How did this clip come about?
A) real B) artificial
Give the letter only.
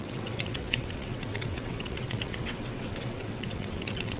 B